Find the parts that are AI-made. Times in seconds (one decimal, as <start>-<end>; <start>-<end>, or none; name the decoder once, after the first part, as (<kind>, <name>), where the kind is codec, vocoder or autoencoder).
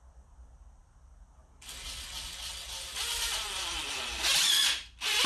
none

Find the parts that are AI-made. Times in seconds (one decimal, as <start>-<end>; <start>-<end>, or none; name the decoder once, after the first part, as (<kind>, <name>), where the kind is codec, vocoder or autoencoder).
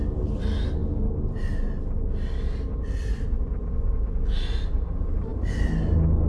none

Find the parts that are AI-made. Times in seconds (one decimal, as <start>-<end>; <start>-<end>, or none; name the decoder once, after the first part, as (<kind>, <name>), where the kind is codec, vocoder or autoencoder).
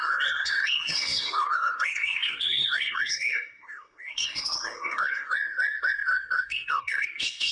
0.0-7.5 (codec, SNAC)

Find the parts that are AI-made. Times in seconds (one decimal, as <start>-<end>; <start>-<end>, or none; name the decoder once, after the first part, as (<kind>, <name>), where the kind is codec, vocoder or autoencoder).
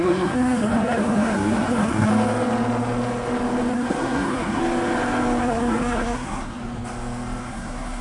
0.0-2.1 (codec, SNAC); 3.7-4.6; 5.4-6.6; 7.4-8.0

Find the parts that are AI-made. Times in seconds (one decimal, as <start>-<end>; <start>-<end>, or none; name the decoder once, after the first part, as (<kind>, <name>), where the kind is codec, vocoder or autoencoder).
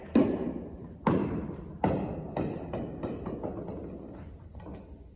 none